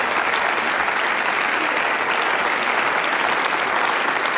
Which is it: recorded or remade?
recorded